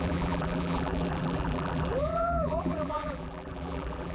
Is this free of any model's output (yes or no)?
no